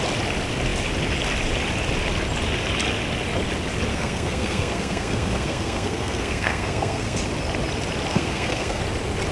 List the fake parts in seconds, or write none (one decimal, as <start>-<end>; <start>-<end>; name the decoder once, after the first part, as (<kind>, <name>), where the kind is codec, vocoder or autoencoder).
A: 3.9-7.2 (codec, SNAC); 8.1-8.8